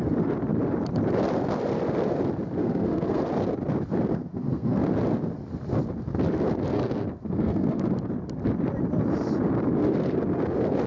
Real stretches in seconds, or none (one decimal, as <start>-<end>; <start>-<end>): 0.0-2.6; 3.3-4.1; 4.8-6.7; 7.8-10.9